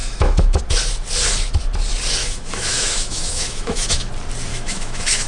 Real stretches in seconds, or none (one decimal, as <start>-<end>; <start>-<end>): 0.6-2.2; 4.1-4.5